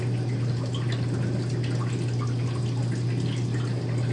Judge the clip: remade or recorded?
recorded